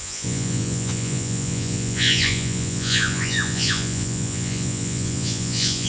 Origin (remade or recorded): remade